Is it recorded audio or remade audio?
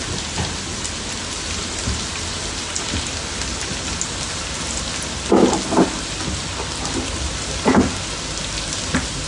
recorded